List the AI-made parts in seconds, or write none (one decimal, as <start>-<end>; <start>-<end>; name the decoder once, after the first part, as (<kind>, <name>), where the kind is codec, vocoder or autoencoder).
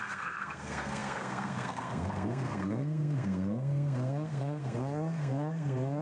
0.0-6.0 (codec, SNAC)